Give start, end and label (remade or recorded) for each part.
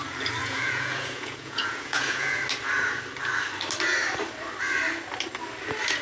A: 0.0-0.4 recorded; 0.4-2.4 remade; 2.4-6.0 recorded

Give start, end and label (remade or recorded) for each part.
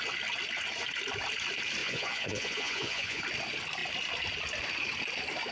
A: 0.0-1.8 recorded; 1.8-3.2 remade; 3.2-5.5 recorded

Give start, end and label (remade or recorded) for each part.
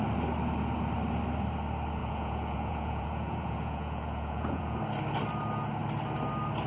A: 0.0-2.0 recorded; 2.0-4.8 remade; 4.8-6.7 recorded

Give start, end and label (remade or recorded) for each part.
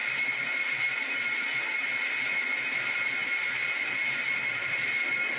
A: 0.0-5.4 recorded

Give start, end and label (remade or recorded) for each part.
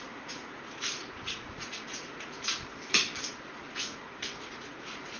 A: 0.0-2.7 remade; 2.7-3.3 recorded; 3.3-5.2 remade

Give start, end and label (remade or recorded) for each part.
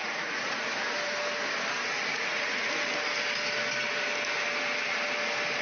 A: 0.0-0.9 remade; 0.9-2.1 recorded; 2.1-2.7 remade; 2.7-5.6 recorded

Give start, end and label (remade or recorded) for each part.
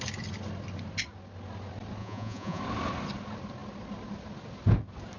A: 0.0-2.0 recorded; 2.0-2.6 remade; 2.6-5.2 recorded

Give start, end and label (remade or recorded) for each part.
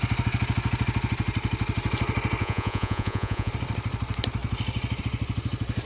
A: 0.0-2.4 recorded; 2.4-3.5 remade; 3.5-5.9 recorded